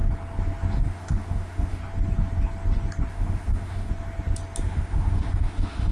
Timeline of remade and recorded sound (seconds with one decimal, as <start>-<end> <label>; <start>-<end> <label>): 0.0-0.8 recorded; 0.8-1.8 remade; 1.8-3.1 recorded; 3.1-3.9 remade; 3.9-4.6 recorded; 4.6-5.9 remade